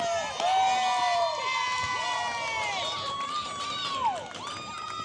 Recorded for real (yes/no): yes